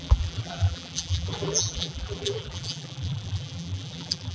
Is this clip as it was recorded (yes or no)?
no